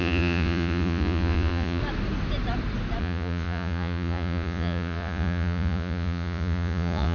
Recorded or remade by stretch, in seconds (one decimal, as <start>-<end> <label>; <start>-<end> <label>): 0.0-1.8 remade; 1.8-3.0 recorded; 3.0-7.1 remade